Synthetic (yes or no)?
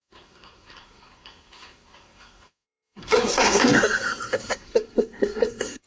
yes